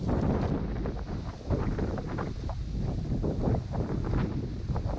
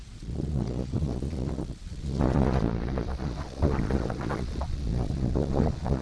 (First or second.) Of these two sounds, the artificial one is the second